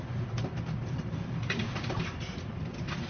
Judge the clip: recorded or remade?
remade